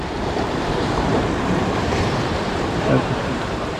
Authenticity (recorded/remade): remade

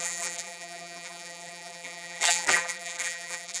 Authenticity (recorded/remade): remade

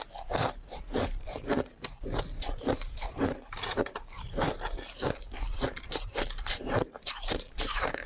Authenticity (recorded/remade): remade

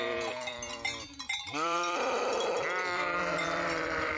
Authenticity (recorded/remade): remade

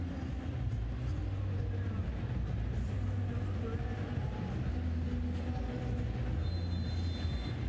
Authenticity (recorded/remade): recorded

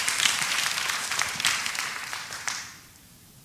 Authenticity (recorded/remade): remade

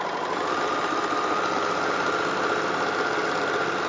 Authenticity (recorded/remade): recorded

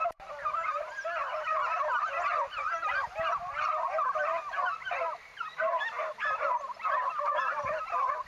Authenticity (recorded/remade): recorded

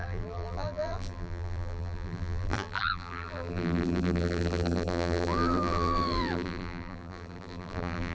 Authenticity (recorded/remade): remade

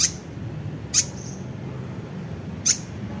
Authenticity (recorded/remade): recorded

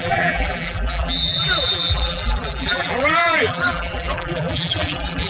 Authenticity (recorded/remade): remade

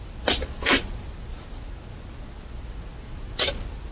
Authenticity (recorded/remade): recorded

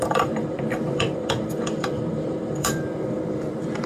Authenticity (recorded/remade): remade